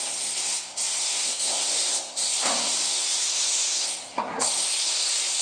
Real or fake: fake